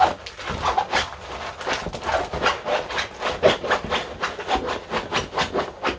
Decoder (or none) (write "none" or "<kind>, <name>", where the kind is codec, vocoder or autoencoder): none